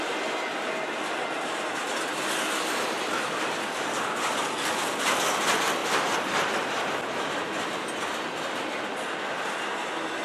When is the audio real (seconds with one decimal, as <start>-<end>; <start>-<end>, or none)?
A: 0.0-5.8; 6.8-10.2